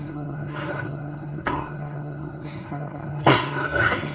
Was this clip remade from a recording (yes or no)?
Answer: yes